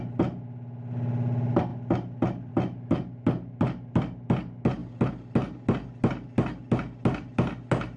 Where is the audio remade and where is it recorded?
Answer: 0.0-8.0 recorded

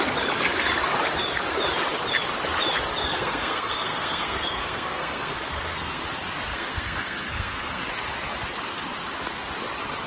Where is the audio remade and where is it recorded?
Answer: 0.0-3.0 recorded; 3.0-6.0 remade; 6.0-6.5 recorded; 6.5-7.8 remade; 7.8-10.1 recorded

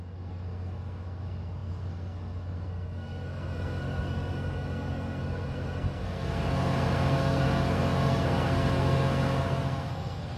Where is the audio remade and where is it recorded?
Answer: 0.0-10.4 remade

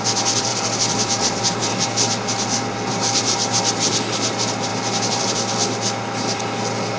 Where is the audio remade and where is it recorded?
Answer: 0.0-7.0 recorded

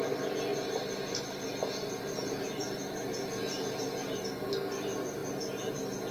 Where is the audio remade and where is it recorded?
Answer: 0.0-6.1 recorded

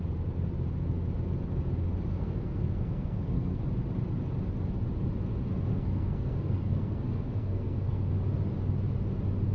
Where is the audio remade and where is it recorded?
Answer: 0.0-2.1 recorded; 2.1-3.6 remade; 3.6-5.7 recorded; 5.7-8.1 remade; 8.1-9.5 recorded

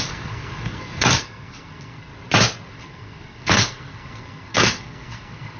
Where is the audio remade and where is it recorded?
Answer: 0.0-2.1 remade; 2.1-2.7 recorded; 2.7-5.6 remade